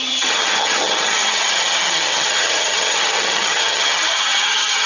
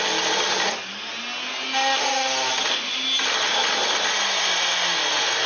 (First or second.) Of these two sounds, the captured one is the second